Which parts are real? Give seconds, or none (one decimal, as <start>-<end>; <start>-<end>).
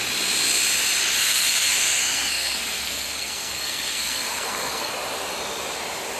0.0-1.2; 4.9-6.2